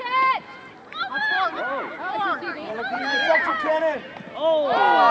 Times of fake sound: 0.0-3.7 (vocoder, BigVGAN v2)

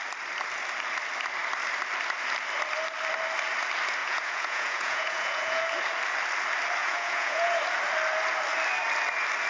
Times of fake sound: 4.0-5.6 (vocoder, Vocos); 6.8-7.6

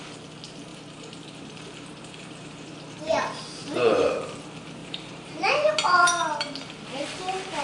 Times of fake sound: 0.7-3.0 (vocoder, BigVGAN v2); 3.6-4.3; 4.8-5.7

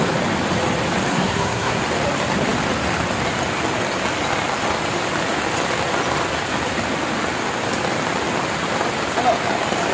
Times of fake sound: 1.1-1.8 (codec, SNAC)

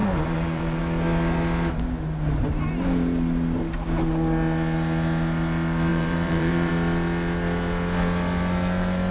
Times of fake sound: 0.0-0.8 (vocoder, BigVGAN v2); 5.9-6.7

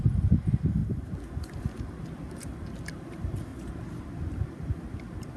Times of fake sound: 0.0-3.5 (vocoder, BigVGAN v2); 4.1-5.4